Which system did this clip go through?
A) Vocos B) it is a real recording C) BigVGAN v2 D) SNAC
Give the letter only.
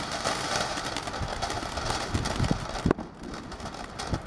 B